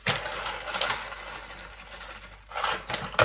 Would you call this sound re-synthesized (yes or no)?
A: no